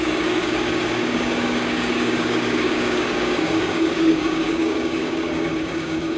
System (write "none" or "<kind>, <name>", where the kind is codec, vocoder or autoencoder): codec, DAC